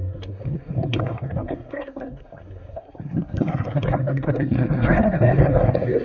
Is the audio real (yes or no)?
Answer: no